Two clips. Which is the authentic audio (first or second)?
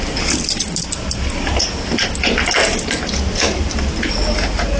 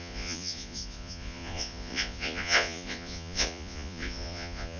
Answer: first